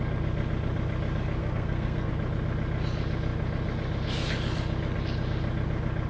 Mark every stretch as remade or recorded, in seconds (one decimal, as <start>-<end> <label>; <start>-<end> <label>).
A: 0.0-1.4 recorded; 1.4-2.1 remade; 2.1-6.1 recorded